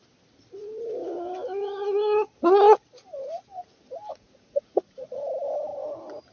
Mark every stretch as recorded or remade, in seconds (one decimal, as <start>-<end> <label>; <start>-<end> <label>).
0.0-4.1 recorded; 4.1-5.2 remade; 5.2-6.3 recorded

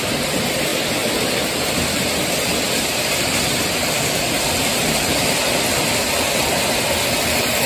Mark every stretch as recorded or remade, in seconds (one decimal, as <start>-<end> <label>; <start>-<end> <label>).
0.0-0.7 recorded; 0.7-5.3 remade; 5.3-7.7 recorded

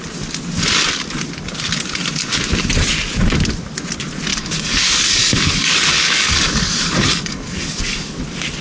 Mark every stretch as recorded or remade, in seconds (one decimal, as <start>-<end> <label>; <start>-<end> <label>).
0.0-4.3 recorded; 4.3-8.2 remade; 8.2-8.6 recorded

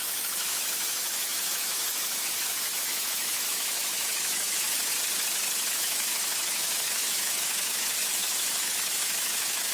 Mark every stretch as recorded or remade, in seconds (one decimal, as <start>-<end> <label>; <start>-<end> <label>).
0.0-4.9 remade; 4.9-5.6 recorded; 5.6-9.7 remade